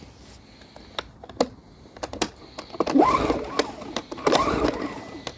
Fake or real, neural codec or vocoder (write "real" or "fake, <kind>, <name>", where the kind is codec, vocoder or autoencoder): real